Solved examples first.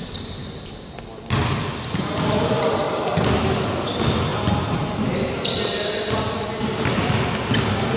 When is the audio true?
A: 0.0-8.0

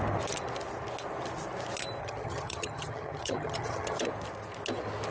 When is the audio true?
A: 0.0-2.0; 4.0-5.1

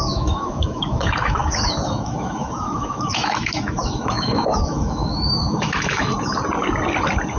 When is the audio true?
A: 6.1-7.4

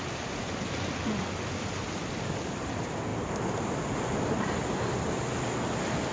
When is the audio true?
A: 0.0-6.1

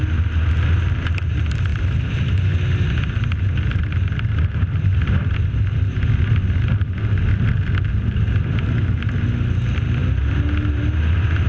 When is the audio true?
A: 0.0-11.5